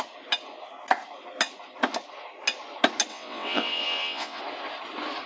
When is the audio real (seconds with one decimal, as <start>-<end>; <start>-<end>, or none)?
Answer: 0.0-3.1; 4.4-5.3